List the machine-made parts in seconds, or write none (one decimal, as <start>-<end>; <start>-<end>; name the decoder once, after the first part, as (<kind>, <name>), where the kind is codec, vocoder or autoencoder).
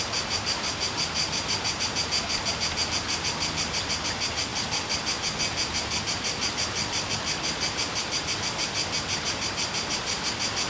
none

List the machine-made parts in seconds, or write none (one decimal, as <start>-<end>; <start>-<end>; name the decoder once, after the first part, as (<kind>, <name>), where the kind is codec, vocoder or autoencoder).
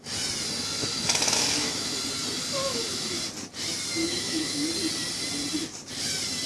0.8-1.9 (autoencoder, DAC-VAE); 2.6-3.2; 4.0-4.7